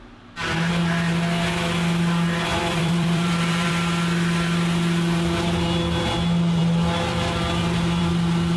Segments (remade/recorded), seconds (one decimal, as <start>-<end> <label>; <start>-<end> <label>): 0.0-2.5 recorded; 2.5-3.7 remade; 3.7-8.6 recorded